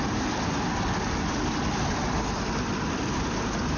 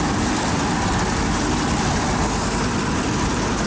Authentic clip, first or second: second